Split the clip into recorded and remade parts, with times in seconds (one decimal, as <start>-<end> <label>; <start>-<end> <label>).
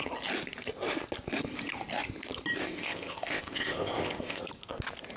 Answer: 0.0-2.6 recorded; 2.6-4.4 remade; 4.4-5.2 recorded